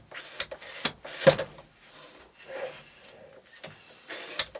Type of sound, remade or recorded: recorded